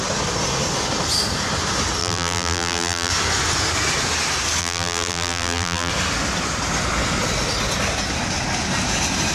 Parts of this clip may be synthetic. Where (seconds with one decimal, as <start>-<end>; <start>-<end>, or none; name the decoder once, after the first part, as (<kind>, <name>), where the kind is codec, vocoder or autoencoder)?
2.0-3.1 (vocoder, BigVGAN v2); 4.6-5.9